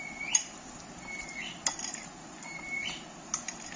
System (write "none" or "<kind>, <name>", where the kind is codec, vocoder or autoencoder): none